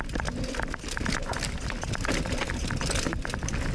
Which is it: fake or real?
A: real